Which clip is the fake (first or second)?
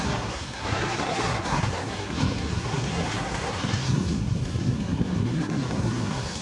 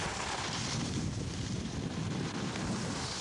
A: first